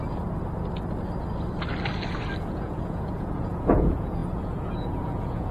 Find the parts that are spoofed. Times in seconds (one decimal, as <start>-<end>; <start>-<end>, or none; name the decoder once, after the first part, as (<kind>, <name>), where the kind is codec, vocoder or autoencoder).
2.4-5.5 (vocoder, Vocos)